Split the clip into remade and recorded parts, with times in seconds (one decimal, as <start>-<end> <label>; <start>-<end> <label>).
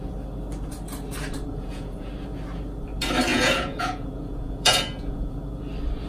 0.0-1.5 recorded; 1.5-2.1 remade; 2.1-3.3 recorded; 3.3-5.4 remade; 5.4-6.1 recorded